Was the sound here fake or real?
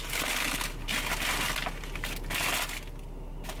real